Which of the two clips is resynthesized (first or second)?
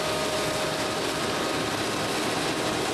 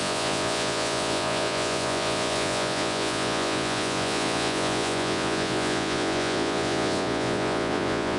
second